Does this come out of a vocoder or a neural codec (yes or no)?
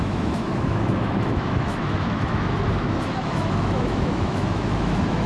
yes